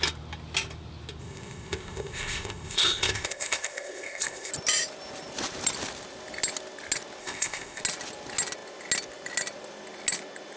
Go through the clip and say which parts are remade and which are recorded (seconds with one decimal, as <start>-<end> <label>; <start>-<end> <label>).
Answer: 0.0-1.2 recorded; 1.2-4.5 remade; 4.5-7.2 recorded; 7.2-7.8 remade; 7.8-10.6 recorded